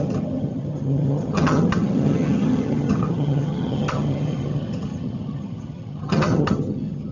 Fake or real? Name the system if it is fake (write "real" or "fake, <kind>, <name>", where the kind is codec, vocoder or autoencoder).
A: fake, vocoder, HiFi-GAN